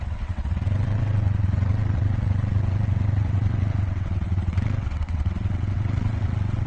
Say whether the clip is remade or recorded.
remade